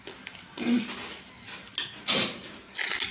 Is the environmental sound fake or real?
real